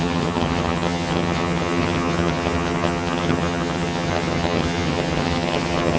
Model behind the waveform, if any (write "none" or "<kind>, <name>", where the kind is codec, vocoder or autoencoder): vocoder, HiFi-GAN